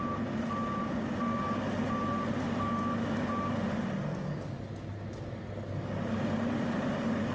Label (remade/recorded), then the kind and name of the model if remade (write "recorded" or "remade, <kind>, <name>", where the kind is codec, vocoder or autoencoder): recorded